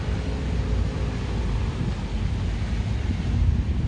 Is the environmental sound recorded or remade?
recorded